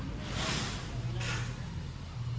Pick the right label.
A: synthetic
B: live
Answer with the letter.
B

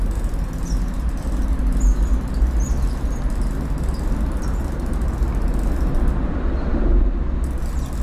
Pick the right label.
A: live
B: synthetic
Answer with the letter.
A